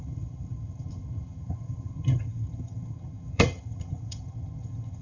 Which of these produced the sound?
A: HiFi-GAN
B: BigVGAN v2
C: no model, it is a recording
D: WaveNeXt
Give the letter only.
A